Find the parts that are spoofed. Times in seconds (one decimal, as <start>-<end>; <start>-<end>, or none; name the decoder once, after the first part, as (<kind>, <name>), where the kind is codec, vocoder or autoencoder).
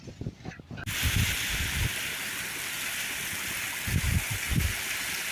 none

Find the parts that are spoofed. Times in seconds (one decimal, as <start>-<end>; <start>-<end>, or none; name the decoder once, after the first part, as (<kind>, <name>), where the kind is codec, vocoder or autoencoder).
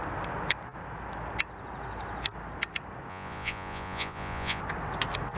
3.1-4.6 (vocoder, Vocos)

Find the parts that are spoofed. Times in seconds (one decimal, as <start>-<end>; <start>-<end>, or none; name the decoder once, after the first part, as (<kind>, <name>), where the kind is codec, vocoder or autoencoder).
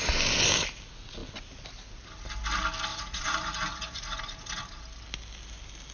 2.9-4.2 (vocoder, Vocos)